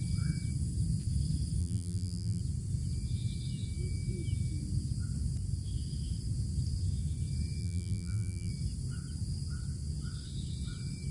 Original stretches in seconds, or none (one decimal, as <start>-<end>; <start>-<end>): 0.0-1.6; 2.4-7.6; 8.5-11.1